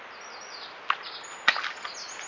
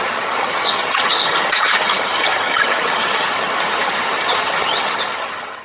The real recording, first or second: first